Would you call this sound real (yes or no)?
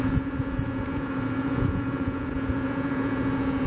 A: no